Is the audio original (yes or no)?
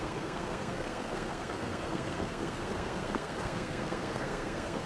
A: no